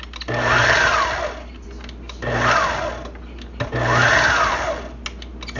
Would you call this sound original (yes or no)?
yes